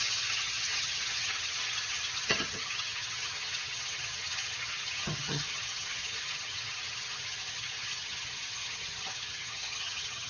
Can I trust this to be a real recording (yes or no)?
no